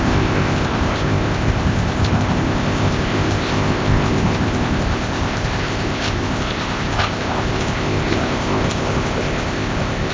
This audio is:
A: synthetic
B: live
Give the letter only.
A